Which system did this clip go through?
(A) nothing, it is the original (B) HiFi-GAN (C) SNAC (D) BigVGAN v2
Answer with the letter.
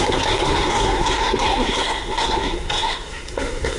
C